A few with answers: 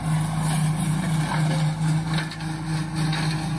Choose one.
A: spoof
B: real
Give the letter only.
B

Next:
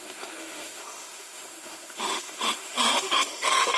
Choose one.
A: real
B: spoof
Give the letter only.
B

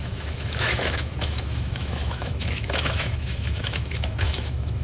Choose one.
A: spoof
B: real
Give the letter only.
A